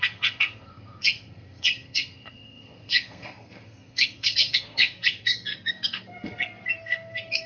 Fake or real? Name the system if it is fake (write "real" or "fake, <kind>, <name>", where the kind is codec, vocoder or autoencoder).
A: fake, codec, SNAC